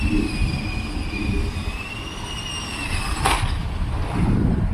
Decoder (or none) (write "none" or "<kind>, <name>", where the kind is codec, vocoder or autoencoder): none